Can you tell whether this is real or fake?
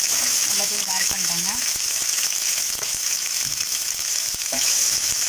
fake